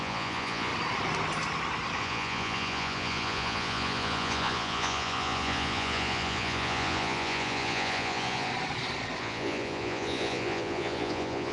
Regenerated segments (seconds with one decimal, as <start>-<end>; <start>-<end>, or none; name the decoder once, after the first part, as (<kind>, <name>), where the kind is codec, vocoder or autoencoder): 0.0-0.7 (vocoder, Vocos); 2.0-8.5; 9.2-11.5